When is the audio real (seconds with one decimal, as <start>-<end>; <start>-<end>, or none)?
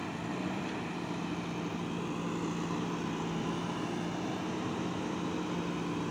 0.9-6.1